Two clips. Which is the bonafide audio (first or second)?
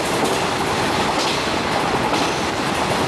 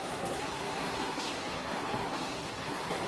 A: first